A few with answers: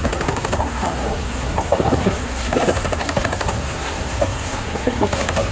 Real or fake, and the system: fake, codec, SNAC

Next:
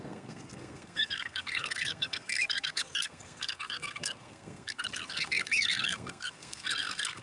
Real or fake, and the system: fake, codec, SNAC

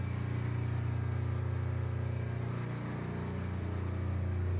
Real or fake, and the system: real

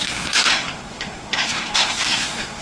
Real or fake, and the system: fake, codec, SNAC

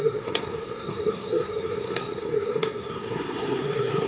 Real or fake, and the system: fake, codec, SNAC